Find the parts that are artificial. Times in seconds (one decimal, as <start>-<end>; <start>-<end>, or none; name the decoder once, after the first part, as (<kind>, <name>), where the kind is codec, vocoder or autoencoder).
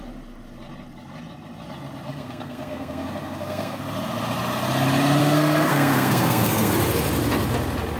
2.1-3.8 (codec, SNAC); 5.2-6.7